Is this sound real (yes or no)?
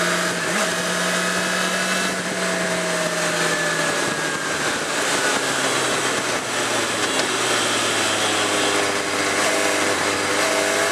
yes